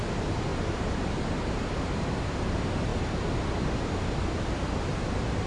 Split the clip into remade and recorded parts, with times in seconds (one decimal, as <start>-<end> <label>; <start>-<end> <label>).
0.0-5.5 recorded

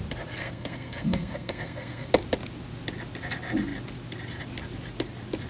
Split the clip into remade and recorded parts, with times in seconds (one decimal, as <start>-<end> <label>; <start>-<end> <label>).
0.0-0.4 recorded; 0.4-2.1 remade; 2.1-5.5 recorded

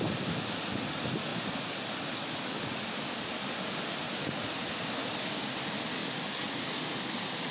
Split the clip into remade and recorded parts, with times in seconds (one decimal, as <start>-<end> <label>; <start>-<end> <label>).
0.0-7.5 recorded

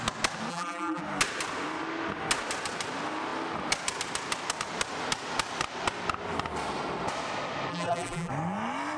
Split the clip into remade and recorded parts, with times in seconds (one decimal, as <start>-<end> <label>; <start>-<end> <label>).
0.0-0.5 recorded; 0.5-1.0 remade; 1.0-7.7 recorded; 7.7-8.3 remade; 8.3-9.0 recorded

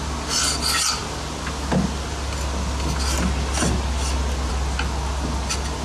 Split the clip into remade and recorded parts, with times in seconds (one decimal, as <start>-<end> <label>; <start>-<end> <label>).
0.0-5.8 recorded